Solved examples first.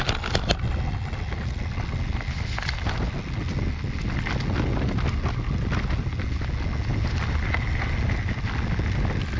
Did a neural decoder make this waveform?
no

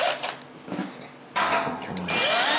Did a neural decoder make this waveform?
no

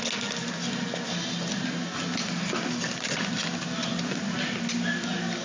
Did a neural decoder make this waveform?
no